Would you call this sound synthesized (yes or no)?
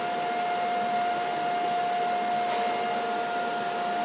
no